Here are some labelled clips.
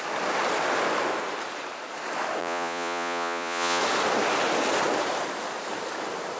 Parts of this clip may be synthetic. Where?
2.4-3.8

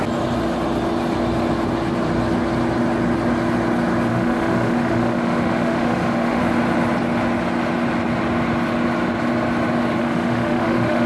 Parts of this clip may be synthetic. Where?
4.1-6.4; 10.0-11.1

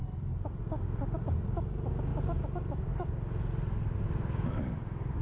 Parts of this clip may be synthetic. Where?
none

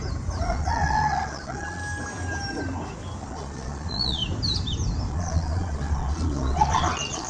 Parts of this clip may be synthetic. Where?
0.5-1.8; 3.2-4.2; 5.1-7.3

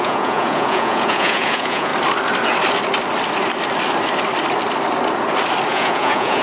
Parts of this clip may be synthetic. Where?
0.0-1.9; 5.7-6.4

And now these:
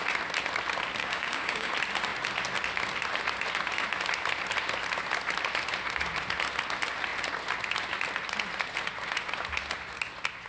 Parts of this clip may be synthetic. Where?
1.0-1.7